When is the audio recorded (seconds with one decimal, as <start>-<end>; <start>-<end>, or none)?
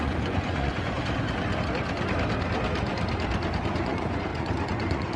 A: 1.0-3.7